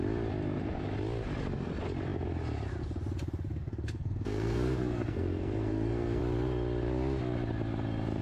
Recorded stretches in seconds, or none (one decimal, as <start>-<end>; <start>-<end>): 0.0-3.5; 6.2-8.2